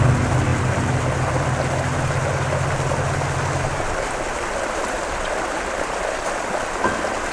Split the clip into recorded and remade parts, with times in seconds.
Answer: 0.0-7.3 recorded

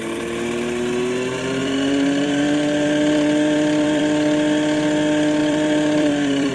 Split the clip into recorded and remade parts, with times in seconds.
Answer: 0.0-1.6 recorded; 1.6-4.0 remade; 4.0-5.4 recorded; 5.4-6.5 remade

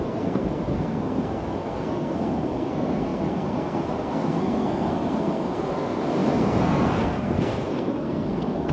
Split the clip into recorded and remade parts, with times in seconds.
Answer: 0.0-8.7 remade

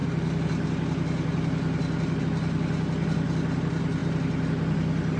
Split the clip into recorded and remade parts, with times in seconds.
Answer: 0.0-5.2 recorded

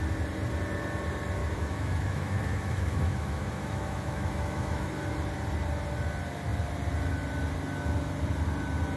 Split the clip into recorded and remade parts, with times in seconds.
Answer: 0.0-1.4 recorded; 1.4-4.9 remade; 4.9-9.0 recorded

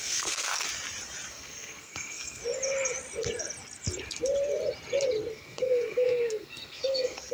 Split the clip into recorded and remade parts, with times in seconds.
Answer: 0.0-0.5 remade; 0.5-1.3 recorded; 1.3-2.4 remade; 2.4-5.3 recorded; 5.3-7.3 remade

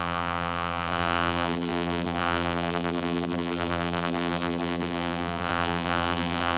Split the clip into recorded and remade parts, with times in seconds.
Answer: 0.0-6.6 remade

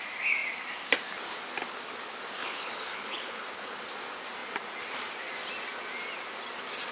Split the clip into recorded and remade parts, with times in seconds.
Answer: 0.0-2.4 recorded; 2.4-3.8 remade; 3.8-6.9 recorded